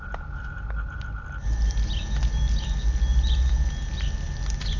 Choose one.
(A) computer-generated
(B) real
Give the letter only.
B